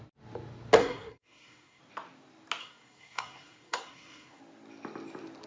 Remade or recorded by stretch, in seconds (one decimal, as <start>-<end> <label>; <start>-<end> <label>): 0.0-0.8 recorded; 0.8-1.8 remade; 1.8-2.6 recorded; 2.6-4.4 remade; 4.4-5.5 recorded